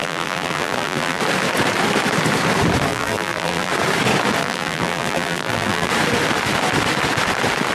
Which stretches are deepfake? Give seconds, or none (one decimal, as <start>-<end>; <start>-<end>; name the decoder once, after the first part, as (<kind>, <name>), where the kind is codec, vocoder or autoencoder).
0.0-1.2 (vocoder, BigVGAN v2); 2.9-3.7; 4.4-5.9